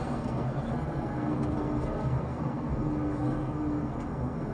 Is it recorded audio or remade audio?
remade